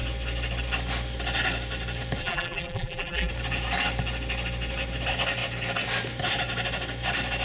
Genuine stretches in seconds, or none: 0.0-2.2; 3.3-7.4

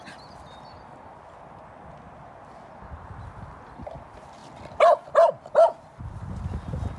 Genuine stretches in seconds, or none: 0.0-7.0

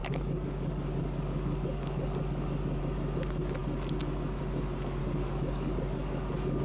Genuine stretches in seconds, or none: 2.8-5.0

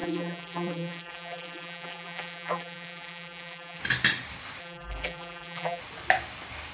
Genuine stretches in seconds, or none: 3.8-4.6; 5.8-6.7

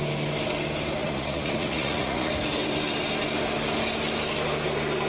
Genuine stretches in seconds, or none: 0.0-1.0; 2.3-5.1